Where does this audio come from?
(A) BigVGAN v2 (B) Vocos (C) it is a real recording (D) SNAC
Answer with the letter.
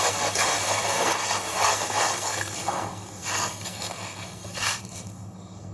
D